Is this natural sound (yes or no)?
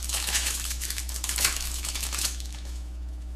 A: no